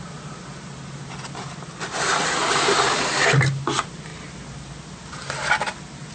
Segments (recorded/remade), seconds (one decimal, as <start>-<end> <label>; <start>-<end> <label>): 0.0-4.1 remade; 4.1-6.1 recorded

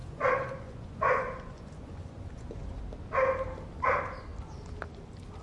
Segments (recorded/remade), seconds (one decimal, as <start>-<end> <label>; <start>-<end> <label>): 0.0-2.8 remade; 2.8-5.4 recorded